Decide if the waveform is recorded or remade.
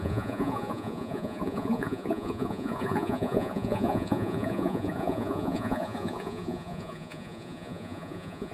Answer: remade